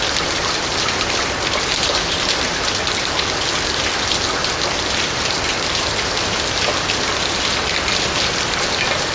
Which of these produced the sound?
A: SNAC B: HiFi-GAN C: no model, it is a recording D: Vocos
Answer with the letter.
C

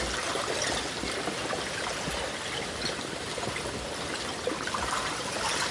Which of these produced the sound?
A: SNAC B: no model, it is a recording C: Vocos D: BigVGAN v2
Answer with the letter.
B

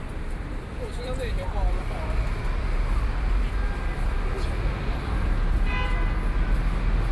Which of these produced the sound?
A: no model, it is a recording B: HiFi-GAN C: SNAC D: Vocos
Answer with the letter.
A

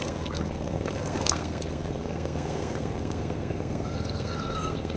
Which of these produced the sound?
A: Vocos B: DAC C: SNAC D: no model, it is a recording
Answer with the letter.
C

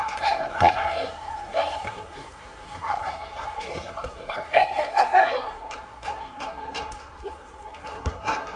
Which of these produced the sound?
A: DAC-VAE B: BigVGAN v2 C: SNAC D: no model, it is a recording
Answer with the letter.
C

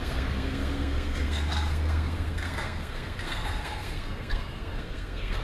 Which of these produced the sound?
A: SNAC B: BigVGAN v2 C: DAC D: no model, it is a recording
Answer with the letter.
A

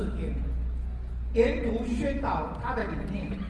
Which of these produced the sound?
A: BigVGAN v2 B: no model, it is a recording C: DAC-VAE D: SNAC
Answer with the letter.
B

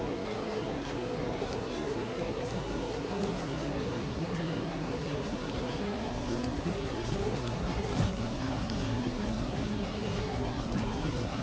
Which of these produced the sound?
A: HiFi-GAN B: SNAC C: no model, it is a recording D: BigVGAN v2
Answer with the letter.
B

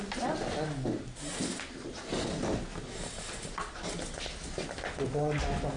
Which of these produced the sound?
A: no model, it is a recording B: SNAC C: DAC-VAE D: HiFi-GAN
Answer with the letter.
A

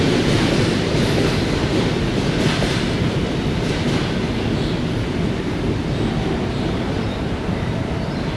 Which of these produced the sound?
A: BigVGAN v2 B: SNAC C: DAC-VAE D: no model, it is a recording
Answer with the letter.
D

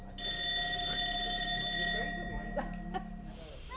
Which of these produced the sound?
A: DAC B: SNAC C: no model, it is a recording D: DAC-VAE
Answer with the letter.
C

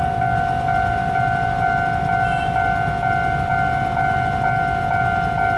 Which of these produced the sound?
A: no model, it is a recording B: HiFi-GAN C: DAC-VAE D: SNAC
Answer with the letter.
A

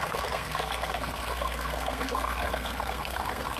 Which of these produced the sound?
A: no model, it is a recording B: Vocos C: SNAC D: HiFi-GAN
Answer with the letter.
C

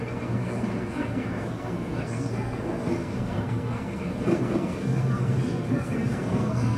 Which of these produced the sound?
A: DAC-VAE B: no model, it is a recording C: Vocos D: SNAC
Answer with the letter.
D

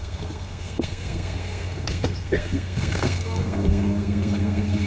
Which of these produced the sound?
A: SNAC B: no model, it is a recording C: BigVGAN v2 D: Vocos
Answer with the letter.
A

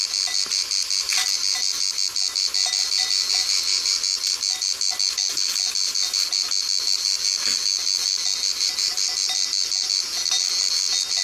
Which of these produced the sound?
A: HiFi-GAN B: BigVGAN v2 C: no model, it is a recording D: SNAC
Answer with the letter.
C